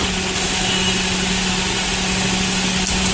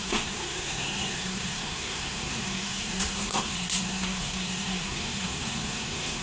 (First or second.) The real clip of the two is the first